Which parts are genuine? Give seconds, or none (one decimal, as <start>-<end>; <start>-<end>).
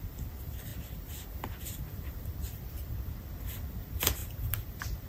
0.7-1.6